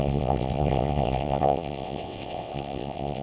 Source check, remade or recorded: remade